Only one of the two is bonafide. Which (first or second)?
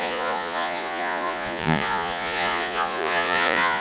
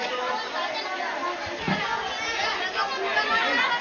second